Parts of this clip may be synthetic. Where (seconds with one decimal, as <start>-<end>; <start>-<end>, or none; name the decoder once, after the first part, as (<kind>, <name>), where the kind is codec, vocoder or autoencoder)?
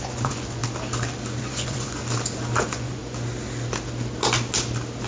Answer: 0.0-0.6 (vocoder, Vocos); 1.4-2.0; 2.6-3.0